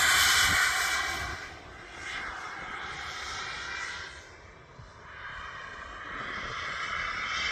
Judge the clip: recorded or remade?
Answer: recorded